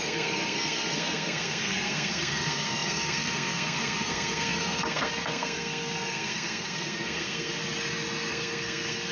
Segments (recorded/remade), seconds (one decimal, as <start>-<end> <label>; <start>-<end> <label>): 0.0-7.6 remade; 7.6-8.3 recorded; 8.3-9.1 remade